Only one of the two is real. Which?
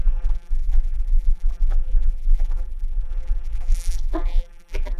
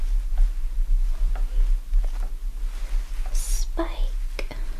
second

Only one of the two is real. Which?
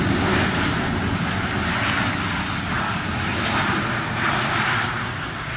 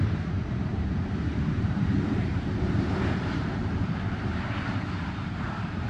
first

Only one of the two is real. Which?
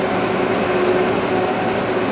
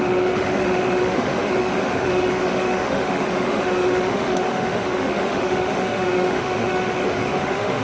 first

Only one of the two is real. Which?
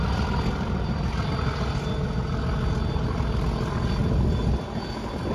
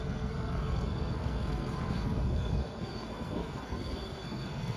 first